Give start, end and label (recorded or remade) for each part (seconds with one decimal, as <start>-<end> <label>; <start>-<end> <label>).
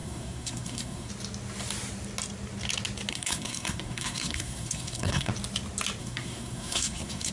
0.0-1.1 remade; 1.1-3.1 recorded; 3.1-5.3 remade; 5.3-6.0 recorded; 6.0-7.3 remade